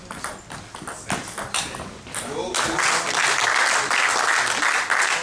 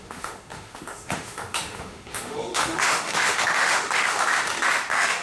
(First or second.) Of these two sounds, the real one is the first